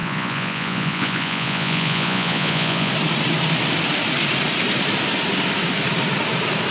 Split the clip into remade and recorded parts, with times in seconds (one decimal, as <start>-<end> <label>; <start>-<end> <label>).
0.0-2.9 remade; 2.9-6.7 recorded